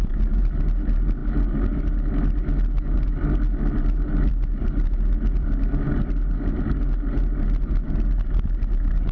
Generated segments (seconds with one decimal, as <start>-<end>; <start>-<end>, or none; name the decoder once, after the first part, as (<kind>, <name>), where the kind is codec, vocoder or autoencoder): none